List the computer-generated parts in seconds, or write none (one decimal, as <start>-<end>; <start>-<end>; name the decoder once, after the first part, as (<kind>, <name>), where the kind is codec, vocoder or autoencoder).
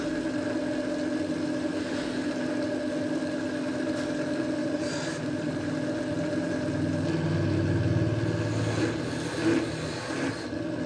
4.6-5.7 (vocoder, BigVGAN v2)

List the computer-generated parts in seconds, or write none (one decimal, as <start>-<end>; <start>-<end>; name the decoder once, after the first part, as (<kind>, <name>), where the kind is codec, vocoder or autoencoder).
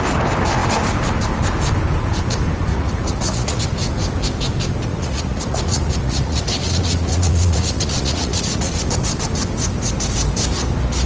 2.7-3.6 (vocoder, Vocos); 4.9-8.9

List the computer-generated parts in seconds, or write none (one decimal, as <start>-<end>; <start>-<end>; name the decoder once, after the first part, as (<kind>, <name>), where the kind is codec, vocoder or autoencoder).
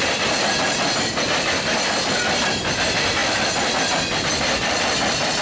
none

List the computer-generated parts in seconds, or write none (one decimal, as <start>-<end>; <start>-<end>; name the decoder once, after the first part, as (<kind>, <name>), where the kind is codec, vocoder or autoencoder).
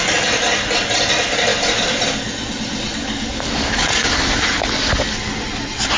3.0-3.9 (codec, DAC)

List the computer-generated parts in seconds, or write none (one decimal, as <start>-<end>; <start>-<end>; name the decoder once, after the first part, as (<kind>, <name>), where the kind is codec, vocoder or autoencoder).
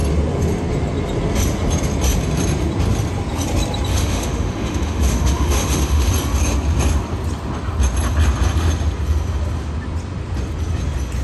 3.9-6.1 (autoencoder, DAC-VAE)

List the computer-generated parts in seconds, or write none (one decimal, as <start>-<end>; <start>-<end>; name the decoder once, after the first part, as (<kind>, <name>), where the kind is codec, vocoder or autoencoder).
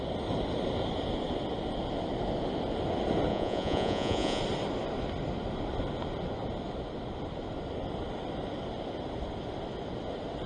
3.3-4.4 (vocoder, Vocos)